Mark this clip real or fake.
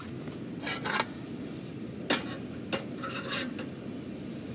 real